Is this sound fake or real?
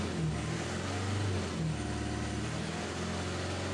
real